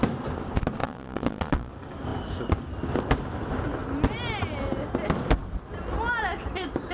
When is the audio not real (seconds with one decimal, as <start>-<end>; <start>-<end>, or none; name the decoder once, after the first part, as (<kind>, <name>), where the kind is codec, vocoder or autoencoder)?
0.8-1.7 (vocoder, Vocos)